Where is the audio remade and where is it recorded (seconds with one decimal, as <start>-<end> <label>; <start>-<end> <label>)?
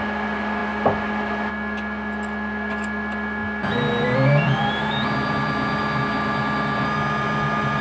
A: 0.0-7.8 recorded